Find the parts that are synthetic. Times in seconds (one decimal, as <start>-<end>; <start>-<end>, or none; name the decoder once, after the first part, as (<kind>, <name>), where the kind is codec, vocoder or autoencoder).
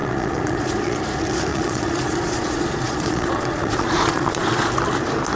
0.0-1.0 (vocoder, Vocos); 1.5-4.7